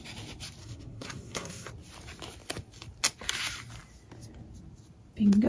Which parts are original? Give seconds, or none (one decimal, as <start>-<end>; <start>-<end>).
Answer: 0.0-0.6; 1.7-5.5